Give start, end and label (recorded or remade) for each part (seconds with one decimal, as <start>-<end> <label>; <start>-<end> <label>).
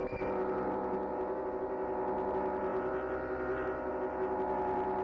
0.0-5.0 recorded